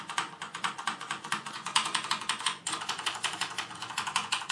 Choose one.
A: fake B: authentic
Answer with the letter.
A